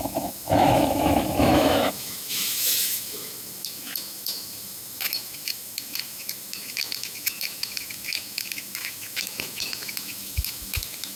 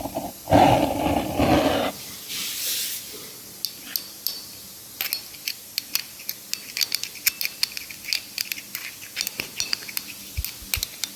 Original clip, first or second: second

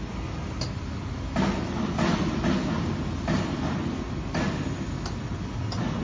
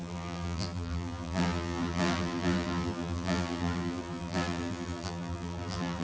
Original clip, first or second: first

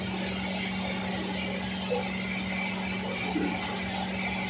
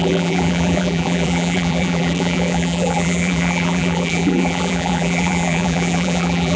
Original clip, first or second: first